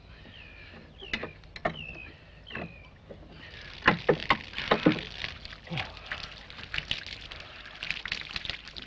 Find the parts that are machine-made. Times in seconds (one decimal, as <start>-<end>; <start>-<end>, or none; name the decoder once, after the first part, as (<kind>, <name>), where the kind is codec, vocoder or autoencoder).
none